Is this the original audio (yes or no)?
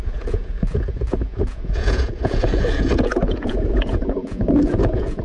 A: no